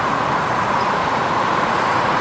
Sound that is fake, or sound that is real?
fake